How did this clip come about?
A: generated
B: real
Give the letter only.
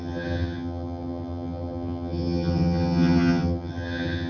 A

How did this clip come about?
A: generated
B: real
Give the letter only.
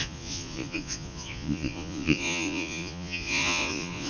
A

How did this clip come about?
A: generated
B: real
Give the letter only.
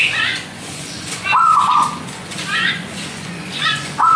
A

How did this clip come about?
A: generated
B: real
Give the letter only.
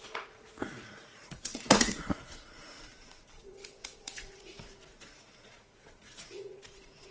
A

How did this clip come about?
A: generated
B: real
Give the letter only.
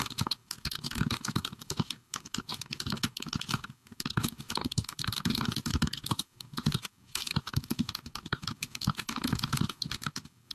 A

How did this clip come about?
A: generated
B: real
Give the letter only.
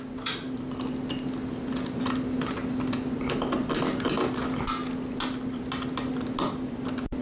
B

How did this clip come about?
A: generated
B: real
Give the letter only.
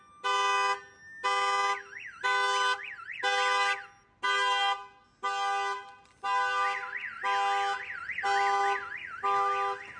B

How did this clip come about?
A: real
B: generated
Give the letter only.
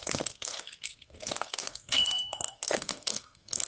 B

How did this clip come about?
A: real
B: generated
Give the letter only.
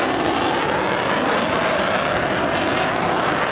A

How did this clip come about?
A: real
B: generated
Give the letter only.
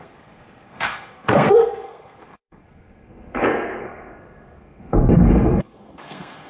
B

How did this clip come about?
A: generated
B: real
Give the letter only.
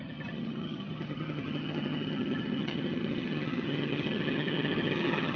A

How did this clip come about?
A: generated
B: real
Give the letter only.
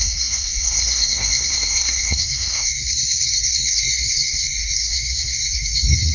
A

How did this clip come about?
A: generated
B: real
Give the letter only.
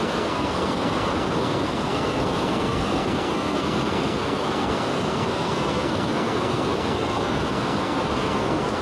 A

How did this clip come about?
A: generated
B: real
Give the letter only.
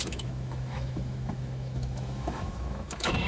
A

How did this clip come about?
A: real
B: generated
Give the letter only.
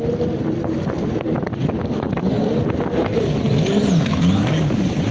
A